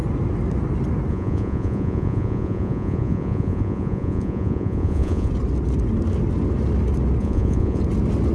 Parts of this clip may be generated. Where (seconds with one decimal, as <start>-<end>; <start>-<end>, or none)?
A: 1.1-5.3; 7.2-7.8